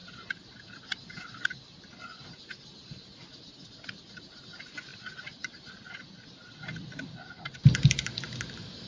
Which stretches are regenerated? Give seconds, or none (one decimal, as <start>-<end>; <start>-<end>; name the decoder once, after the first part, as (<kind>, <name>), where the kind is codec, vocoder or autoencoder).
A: 0.0-0.7 (vocoder, BigVGAN v2); 4.9-5.7